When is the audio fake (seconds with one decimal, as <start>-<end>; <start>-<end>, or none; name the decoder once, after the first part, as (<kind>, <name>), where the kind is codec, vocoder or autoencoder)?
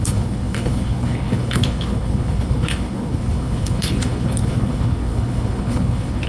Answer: 0.0-6.3 (codec, HILCodec)